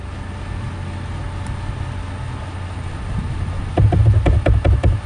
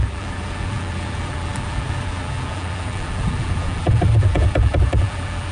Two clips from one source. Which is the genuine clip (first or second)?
first